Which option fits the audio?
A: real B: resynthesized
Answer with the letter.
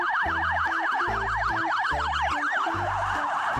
A